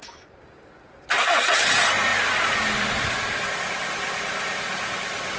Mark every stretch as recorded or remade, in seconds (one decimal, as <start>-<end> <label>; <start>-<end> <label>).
0.0-5.4 recorded